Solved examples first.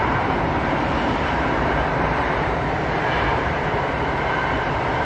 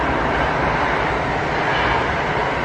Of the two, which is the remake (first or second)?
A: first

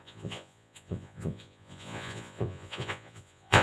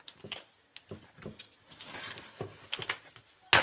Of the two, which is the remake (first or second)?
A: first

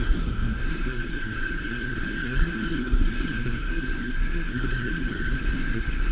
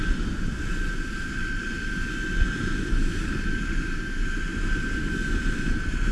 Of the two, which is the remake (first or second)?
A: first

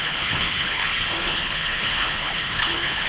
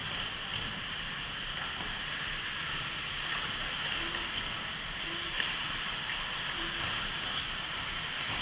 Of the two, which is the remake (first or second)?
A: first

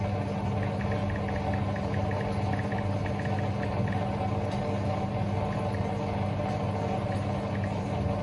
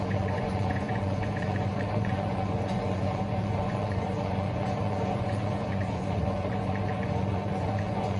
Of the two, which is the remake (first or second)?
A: second